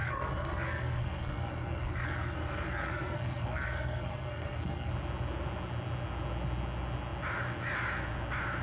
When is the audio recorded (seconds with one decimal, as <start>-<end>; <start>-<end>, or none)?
4.9-8.6